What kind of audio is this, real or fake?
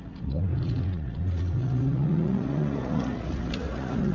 fake